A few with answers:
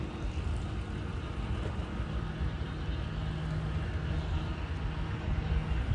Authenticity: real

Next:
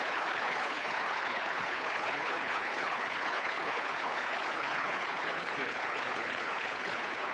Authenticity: fake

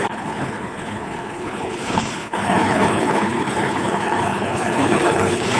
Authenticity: fake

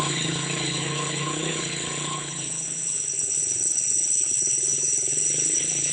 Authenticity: fake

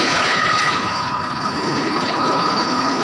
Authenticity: fake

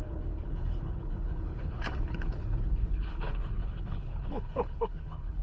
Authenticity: fake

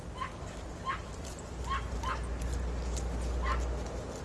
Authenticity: real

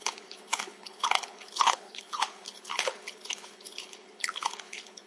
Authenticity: fake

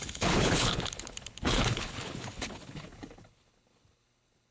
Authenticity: fake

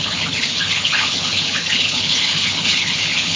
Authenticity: fake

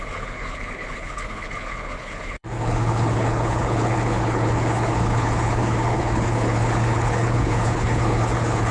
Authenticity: fake